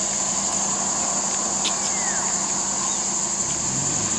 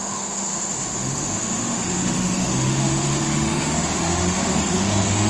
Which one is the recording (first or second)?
first